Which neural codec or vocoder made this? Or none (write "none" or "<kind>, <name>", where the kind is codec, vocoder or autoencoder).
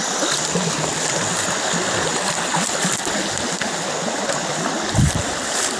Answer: none